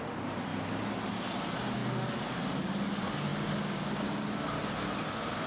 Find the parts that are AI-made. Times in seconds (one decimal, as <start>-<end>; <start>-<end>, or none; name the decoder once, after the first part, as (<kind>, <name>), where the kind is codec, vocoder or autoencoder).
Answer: none